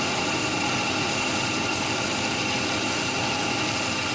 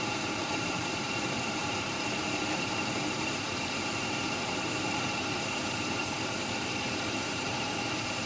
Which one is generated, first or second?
second